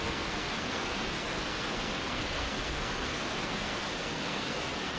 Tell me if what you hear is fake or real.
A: fake